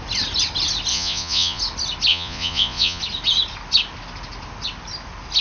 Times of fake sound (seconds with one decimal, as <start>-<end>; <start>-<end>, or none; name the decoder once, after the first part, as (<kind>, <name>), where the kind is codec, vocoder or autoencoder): 0.9-1.6 (vocoder, Vocos); 2.1-3.0